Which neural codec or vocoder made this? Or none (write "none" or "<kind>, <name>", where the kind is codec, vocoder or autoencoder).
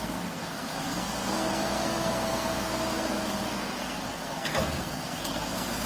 codec, SNAC